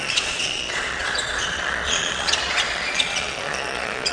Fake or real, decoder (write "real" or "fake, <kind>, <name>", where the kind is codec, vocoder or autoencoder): fake, vocoder, Vocos